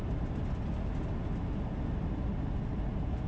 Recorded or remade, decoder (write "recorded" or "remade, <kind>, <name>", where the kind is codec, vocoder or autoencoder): recorded